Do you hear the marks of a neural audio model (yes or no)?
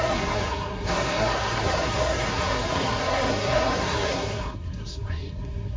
yes